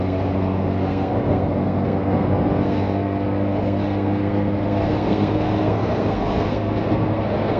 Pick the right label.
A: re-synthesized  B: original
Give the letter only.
A